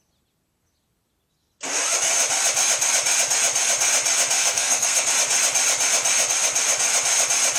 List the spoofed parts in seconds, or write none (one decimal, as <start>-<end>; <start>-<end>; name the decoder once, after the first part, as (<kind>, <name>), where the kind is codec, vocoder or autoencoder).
4.4-5.1 (codec, SNAC)